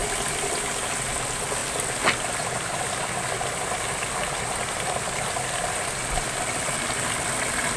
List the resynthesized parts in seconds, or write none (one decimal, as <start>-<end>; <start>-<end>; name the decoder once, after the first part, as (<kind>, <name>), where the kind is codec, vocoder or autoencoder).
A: none